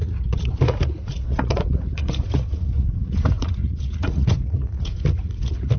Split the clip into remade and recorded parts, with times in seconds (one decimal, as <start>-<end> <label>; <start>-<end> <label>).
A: 0.0-5.8 remade